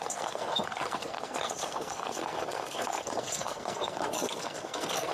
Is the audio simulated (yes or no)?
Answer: yes